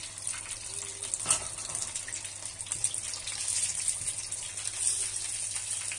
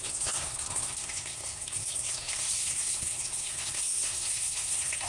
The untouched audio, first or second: first